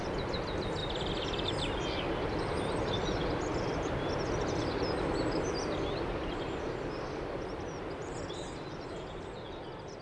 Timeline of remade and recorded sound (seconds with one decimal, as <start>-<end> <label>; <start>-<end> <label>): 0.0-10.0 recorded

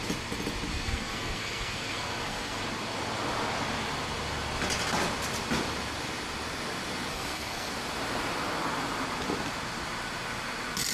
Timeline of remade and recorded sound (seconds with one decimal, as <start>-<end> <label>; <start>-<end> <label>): 0.0-0.7 recorded; 0.7-2.6 remade; 2.6-7.1 recorded; 7.1-7.7 remade; 7.7-10.9 recorded

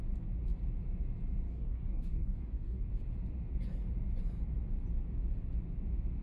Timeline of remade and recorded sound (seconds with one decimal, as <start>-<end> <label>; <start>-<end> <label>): 0.0-1.5 recorded; 1.5-2.9 remade; 2.9-6.2 recorded

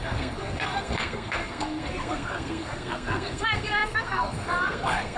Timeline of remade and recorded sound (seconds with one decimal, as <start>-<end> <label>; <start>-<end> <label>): 0.0-5.2 remade